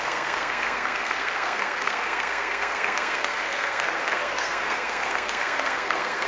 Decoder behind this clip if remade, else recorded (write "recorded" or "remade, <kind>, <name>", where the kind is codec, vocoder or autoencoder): remade, codec, SNAC